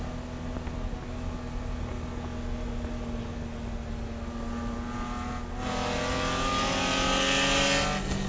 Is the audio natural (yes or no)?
yes